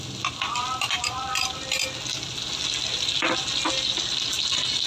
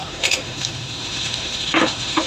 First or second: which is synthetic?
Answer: second